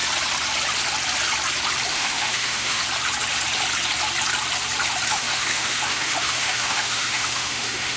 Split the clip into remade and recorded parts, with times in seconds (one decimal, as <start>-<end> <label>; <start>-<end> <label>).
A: 0.0-1.9 recorded; 1.9-2.8 remade; 2.8-5.1 recorded; 5.1-8.0 remade